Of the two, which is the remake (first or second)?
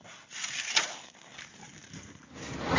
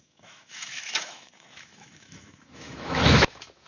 second